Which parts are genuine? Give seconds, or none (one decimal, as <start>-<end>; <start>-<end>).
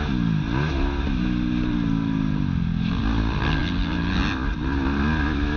0.0-5.6